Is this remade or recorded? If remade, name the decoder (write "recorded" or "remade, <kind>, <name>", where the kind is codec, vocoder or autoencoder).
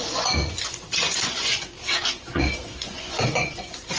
remade, vocoder, Vocos